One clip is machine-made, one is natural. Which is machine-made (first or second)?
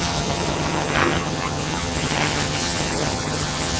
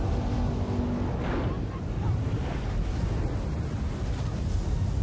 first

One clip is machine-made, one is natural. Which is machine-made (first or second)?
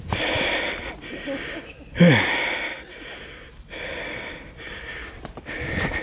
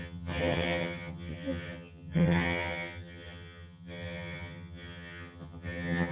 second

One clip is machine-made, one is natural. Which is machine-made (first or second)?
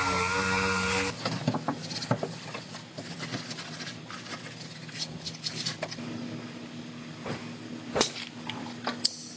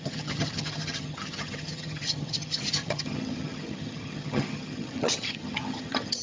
second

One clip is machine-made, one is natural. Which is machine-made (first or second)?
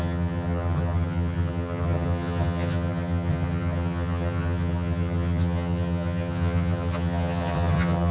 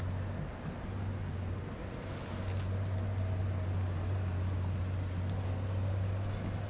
first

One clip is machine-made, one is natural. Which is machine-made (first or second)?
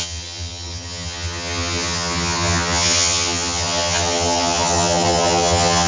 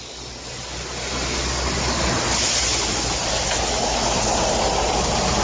first